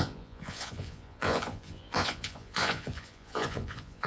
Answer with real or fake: fake